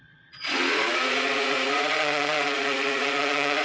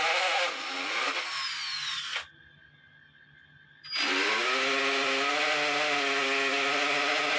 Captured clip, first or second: second